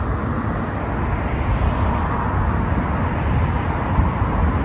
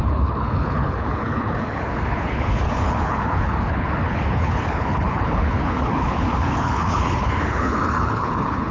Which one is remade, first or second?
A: second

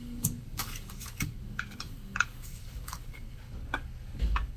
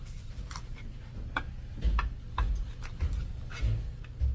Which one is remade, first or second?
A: first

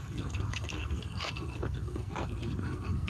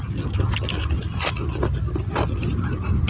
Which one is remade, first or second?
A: first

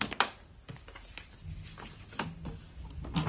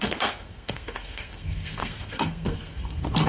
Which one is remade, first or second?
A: second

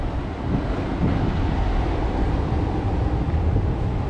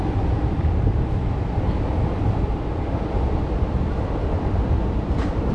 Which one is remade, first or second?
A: second